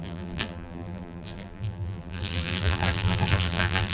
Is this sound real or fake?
fake